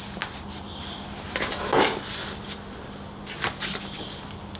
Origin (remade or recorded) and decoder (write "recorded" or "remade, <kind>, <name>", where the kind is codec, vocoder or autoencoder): recorded